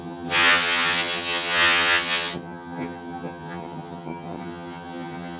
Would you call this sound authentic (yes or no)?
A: no